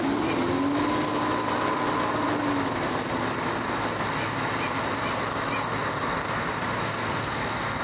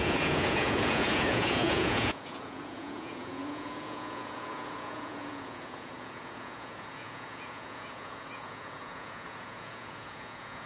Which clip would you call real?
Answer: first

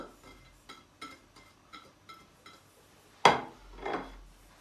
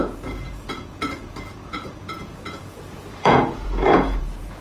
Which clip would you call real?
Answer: first